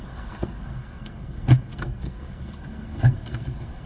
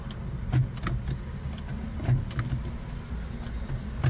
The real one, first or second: second